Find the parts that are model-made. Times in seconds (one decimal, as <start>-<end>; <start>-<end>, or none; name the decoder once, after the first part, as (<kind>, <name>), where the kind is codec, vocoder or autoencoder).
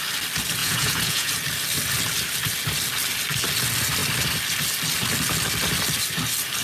0.6-1.3 (vocoder, Vocos)